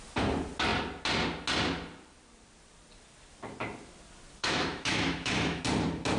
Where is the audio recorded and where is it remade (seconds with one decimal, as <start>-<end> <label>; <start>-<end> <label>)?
0.0-4.4 recorded; 4.4-5.6 remade; 5.6-6.2 recorded